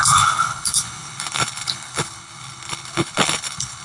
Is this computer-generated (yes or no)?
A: yes